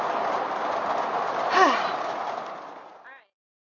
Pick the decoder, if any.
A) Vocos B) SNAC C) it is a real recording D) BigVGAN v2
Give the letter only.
C